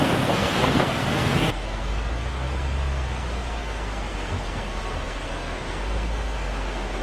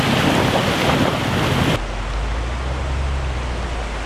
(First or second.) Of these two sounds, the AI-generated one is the first